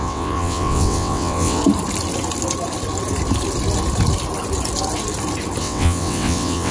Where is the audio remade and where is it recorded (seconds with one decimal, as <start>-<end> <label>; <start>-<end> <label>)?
0.0-1.6 remade; 1.6-5.6 recorded; 5.6-6.7 remade